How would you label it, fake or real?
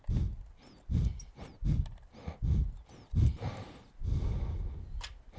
real